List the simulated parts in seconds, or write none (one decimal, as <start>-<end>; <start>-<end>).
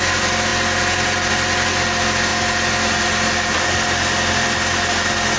none